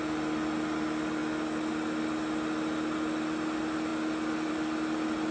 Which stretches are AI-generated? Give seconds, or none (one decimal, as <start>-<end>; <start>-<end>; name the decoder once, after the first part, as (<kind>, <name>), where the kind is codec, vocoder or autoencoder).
none